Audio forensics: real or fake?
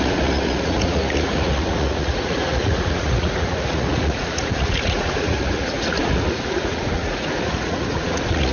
fake